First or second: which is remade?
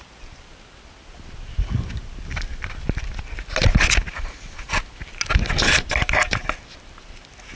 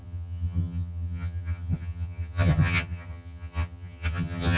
second